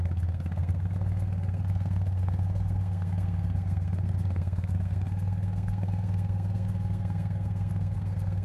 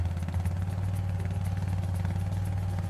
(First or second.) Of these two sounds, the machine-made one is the first